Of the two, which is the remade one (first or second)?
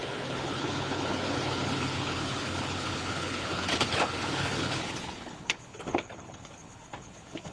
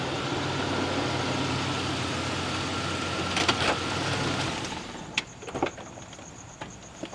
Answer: first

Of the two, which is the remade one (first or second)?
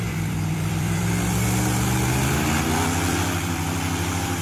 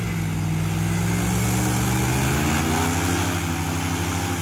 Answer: first